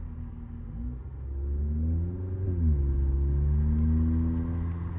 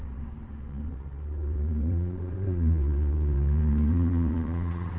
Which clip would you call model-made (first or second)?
second